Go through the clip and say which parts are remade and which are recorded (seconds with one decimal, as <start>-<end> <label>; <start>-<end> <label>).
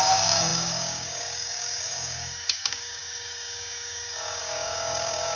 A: 0.0-5.4 remade